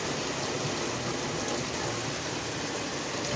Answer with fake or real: real